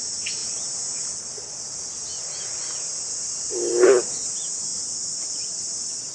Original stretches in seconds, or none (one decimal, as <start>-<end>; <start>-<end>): 0.0-6.1